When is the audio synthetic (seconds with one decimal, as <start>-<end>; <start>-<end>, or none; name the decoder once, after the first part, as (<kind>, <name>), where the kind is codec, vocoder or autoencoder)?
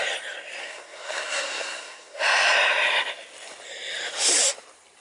0.6-2.2 (codec, SNAC)